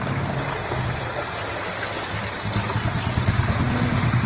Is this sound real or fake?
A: real